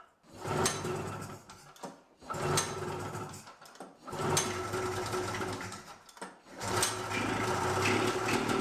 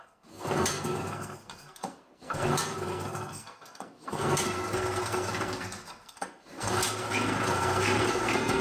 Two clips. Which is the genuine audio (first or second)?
first